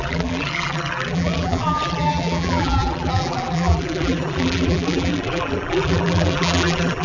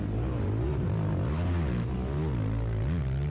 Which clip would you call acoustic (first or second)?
second